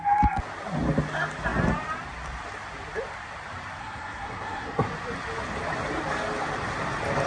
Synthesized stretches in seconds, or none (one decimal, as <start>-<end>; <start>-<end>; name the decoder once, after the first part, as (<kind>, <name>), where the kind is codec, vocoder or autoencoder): 3.8-4.9 (codec, SNAC)